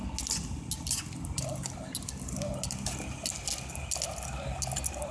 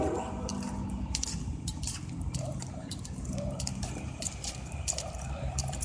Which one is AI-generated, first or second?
second